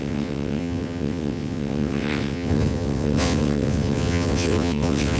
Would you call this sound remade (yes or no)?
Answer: yes